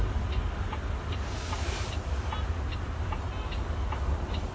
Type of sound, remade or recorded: recorded